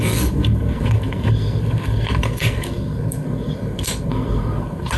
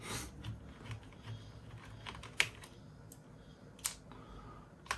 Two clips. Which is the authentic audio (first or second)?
second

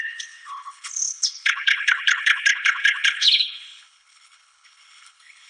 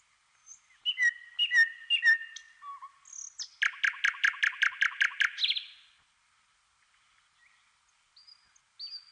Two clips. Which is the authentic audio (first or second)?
second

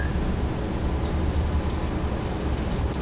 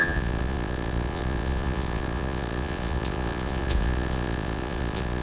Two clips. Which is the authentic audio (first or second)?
first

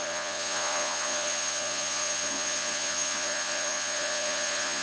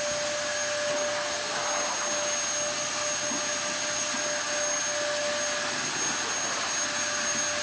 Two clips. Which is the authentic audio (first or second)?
second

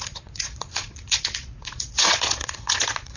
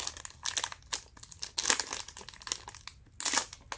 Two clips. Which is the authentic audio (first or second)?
second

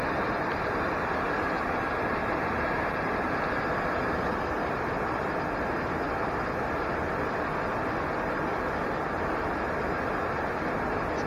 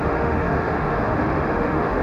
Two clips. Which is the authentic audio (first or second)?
first